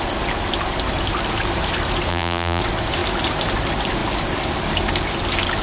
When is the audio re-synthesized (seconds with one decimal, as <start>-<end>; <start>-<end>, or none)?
2.1-2.6